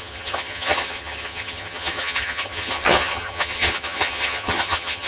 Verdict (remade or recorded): remade